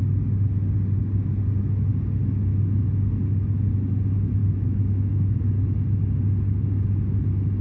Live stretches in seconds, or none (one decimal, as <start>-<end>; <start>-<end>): 0.0-4.4; 5.4-7.6